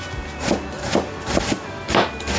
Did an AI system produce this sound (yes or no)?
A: no